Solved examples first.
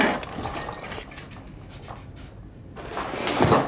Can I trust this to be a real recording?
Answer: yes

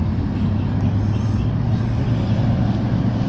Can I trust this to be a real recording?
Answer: yes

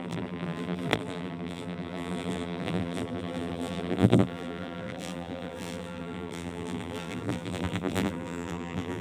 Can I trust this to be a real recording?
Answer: no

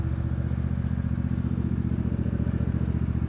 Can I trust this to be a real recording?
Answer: yes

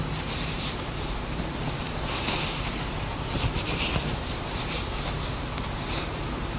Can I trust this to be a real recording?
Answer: no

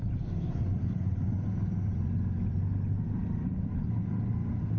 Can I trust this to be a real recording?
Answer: yes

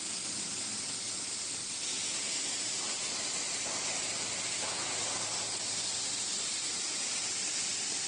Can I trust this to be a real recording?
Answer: yes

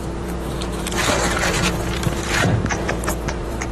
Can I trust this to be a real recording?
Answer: no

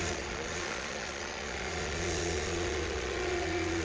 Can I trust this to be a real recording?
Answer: no